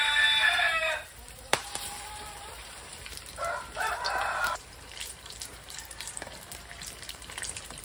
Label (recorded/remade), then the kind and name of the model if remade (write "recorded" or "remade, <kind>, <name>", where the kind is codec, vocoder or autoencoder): remade, vocoder, BigVGAN v2